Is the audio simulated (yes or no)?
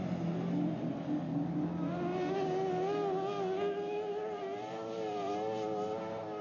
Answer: no